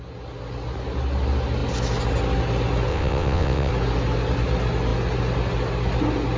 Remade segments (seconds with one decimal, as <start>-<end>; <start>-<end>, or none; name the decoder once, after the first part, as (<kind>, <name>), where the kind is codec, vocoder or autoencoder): 2.9-3.7 (vocoder, WaveNeXt)